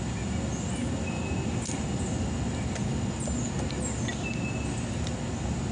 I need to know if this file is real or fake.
real